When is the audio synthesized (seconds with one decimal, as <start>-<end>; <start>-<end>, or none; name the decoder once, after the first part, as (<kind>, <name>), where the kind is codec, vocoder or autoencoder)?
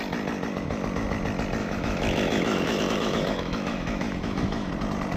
1.6-4.7 (autoencoder, DAC-VAE)